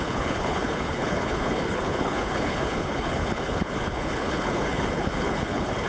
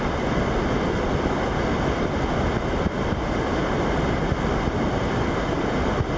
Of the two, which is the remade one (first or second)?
first